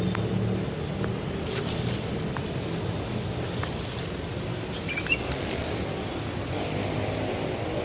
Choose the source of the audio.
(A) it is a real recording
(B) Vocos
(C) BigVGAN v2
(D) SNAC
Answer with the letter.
A